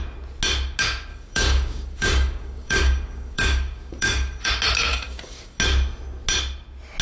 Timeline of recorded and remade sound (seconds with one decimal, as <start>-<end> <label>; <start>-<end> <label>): 0.0-1.1 recorded; 1.1-4.5 remade; 4.5-4.9 recorded; 4.9-5.6 remade; 5.6-7.0 recorded